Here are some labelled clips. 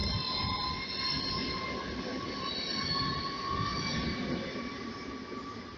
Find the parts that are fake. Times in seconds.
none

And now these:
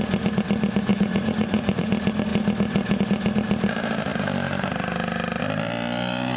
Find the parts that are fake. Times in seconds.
0.9-1.9 (vocoder, Vocos)

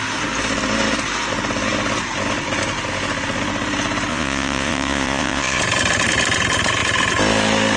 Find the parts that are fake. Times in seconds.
4.1-5.6 (vocoder, Vocos)

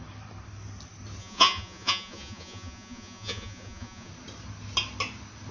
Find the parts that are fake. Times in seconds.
1.2-4.1 (vocoder, Vocos)

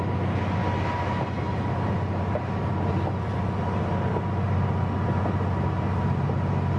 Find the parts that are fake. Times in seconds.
none

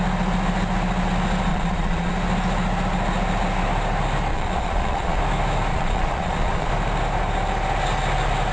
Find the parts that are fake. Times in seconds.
1.5-2.1 (vocoder, Vocos); 4.3-5.2; 5.7-6.7

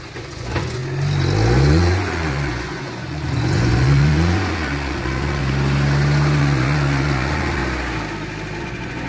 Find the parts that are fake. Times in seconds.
0.0-0.8 (vocoder, Vocos); 1.7-5.4; 6.4-7.6; 8.6-9.1